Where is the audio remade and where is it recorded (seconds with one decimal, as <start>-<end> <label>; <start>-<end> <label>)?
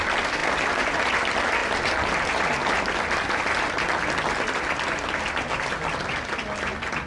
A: 0.0-7.1 recorded